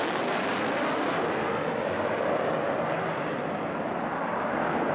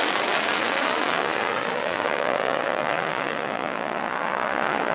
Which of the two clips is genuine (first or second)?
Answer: first